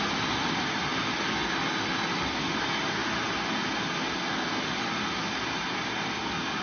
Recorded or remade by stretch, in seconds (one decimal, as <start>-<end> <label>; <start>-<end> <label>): 0.0-6.6 recorded